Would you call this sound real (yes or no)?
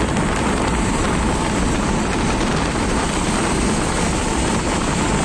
no